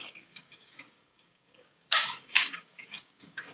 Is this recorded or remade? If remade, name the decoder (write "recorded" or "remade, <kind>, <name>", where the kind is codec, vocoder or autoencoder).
remade, codec, DAC